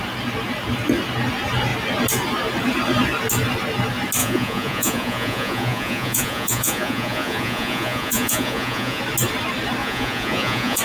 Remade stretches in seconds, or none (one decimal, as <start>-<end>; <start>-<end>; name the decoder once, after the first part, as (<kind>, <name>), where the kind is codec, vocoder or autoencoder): 4.2-9.0 (vocoder, Vocos); 9.8-10.8